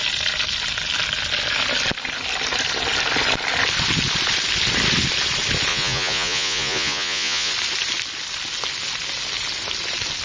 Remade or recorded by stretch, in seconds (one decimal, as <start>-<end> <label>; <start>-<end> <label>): 0.0-5.7 recorded; 5.7-7.5 remade; 7.5-10.2 recorded